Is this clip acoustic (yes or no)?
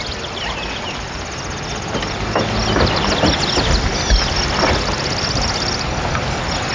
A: yes